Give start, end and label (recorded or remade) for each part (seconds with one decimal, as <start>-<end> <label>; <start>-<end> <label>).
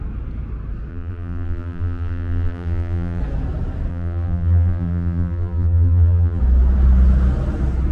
0.0-0.9 recorded; 0.9-3.2 remade; 3.2-3.9 recorded; 3.9-6.4 remade; 6.4-7.9 recorded